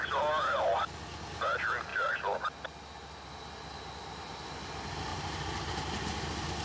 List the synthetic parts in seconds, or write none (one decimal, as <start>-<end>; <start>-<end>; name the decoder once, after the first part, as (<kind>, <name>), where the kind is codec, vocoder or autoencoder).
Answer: 5.1-5.8 (vocoder, BigVGAN v2)